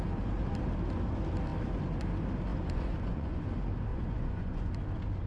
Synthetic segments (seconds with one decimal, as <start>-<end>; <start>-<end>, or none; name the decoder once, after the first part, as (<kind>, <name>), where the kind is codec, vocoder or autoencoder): 2.5-3.5 (vocoder, Vocos); 3.9-4.7